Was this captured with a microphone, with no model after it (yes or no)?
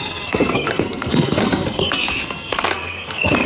no